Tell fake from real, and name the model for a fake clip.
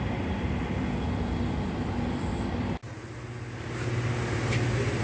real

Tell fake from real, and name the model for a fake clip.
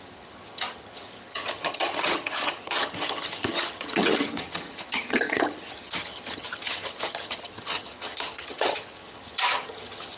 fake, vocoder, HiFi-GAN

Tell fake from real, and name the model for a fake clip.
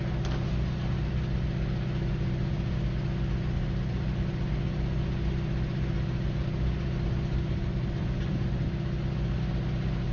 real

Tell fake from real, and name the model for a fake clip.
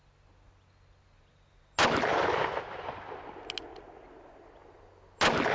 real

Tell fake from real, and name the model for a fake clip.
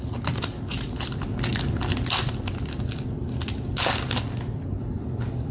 real